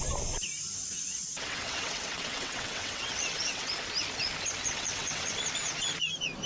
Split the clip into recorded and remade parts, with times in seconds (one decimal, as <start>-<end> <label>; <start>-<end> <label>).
0.0-1.1 recorded; 1.1-3.7 remade; 3.7-4.7 recorded; 4.7-5.4 remade; 5.4-6.5 recorded